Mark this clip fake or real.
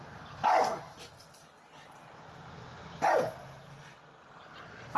real